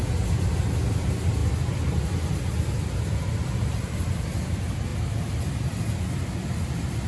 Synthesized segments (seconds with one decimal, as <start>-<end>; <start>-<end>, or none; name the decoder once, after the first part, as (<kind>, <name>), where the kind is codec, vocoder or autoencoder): none